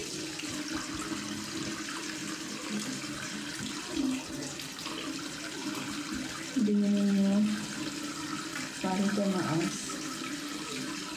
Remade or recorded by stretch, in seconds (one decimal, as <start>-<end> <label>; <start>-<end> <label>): 0.0-11.2 recorded